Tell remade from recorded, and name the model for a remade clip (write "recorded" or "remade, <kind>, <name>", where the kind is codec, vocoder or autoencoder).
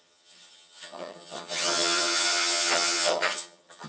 remade, vocoder, HiFi-GAN